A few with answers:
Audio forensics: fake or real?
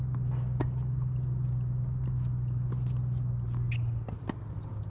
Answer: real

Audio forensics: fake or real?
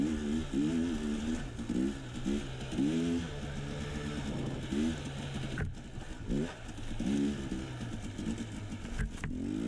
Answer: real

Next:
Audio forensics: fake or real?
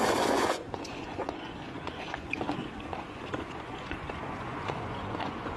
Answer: fake